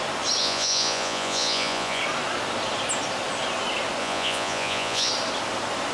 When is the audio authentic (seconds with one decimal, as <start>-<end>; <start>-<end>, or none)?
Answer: 0.0-0.4; 2.0-4.0; 5.1-5.9